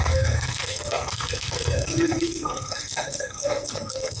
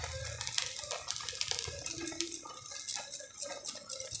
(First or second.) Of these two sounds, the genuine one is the second